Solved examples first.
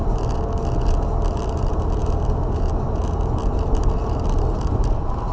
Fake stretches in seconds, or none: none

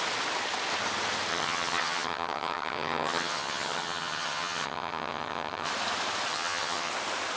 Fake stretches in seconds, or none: 1.3-5.7 (vocoder, HiFi-GAN); 6.3-6.9

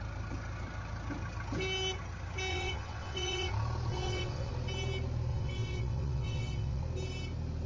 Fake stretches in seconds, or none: 2.5-3.5 (vocoder, WaveNeXt); 3.9-4.5; 5.3-6.8

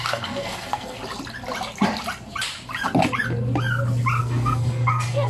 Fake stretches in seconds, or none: 0.0-1.0 (codec, SNAC); 4.2-5.3

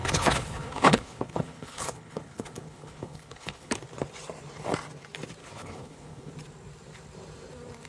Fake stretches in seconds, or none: 0.0-3.7 (codec, HILCodec); 5.4-6.3

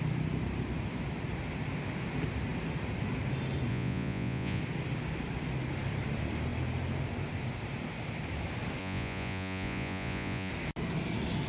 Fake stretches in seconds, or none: 3.7-4.6 (vocoder, Vocos); 8.8-10.5

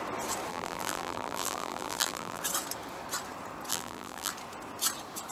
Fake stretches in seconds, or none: 0.5-2.4 (vocoder, BigVGAN v2); 3.7-4.3

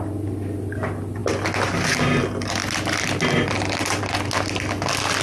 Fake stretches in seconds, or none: none